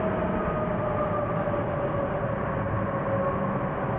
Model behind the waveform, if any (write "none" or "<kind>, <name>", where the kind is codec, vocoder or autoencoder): none